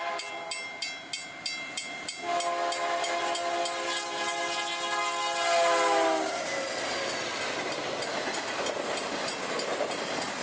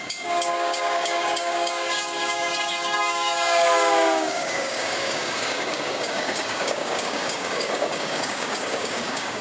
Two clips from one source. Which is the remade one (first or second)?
second